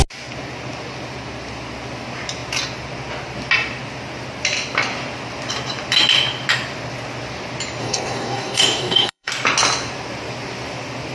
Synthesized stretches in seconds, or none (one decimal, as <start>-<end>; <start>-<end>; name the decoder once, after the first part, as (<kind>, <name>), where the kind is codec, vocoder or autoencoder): 7.8-9.3 (codec, DAC)